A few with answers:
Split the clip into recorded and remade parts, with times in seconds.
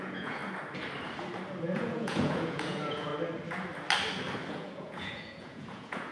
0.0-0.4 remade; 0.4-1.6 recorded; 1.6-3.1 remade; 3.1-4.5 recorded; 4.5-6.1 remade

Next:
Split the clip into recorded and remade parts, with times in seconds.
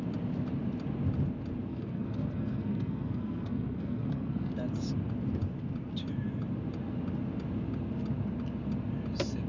0.0-1.7 recorded; 1.7-4.5 remade; 4.5-9.5 recorded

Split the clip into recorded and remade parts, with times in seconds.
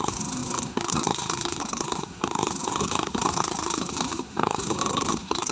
0.0-5.5 remade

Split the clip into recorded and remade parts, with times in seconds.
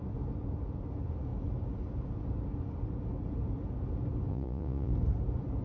0.0-4.3 recorded; 4.3-4.9 remade; 4.9-5.6 recorded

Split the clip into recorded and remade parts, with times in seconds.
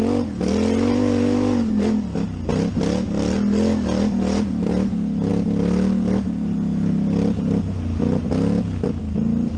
0.0-9.6 recorded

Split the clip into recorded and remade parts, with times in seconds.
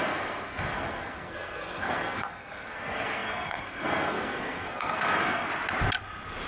0.0-5.5 remade; 5.5-6.5 recorded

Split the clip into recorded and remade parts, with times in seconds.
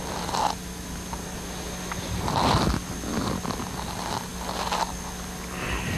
0.0-6.0 recorded